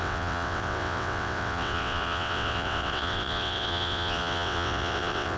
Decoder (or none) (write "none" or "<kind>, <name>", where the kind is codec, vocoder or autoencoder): vocoder, WaveNeXt